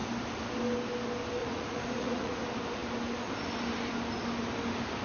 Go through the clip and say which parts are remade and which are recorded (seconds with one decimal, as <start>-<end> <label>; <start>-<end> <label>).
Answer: 0.0-1.4 recorded; 1.4-2.4 remade; 2.4-5.0 recorded